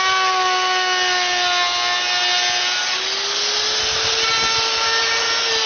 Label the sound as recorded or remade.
recorded